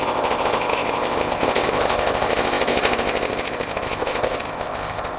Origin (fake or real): fake